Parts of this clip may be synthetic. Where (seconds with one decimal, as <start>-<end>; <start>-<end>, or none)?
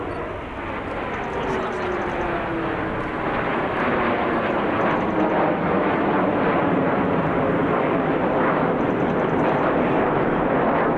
7.6-10.4